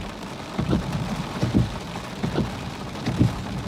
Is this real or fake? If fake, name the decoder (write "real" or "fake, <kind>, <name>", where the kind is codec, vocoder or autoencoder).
real